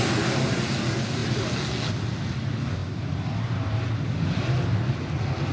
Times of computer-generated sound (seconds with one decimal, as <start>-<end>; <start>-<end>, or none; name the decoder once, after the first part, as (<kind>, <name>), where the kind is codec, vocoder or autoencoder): none